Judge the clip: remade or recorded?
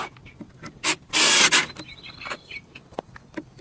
recorded